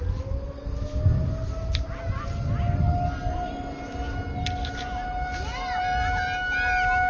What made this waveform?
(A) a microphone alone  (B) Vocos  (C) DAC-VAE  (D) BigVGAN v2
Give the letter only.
A